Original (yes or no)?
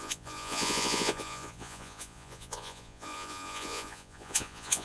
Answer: no